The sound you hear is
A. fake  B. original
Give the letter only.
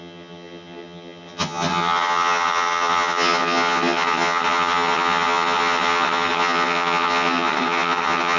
A